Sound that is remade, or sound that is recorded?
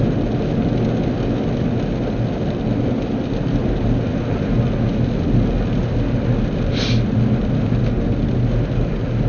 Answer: recorded